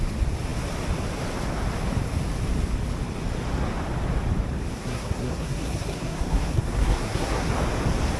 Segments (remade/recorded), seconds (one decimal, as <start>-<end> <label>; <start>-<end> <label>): 0.0-4.8 recorded; 4.8-7.5 remade; 7.5-8.2 recorded